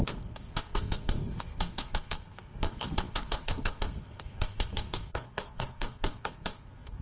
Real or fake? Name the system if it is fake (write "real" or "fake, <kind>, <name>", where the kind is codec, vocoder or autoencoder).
fake, codec, SNAC